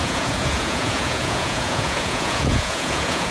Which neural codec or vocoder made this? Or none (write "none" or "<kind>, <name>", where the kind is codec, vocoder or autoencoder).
vocoder, Vocos